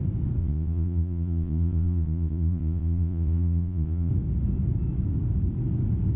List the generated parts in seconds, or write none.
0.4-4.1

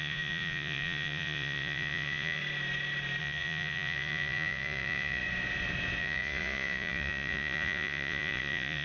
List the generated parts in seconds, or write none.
0.0-2.4; 3.2-5.2; 6.0-8.8

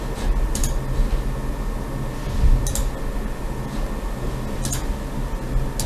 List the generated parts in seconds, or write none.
none

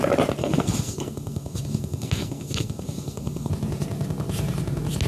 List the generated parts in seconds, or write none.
0.4-3.5